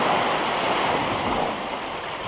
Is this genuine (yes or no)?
yes